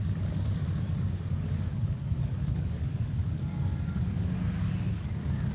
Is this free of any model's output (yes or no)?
no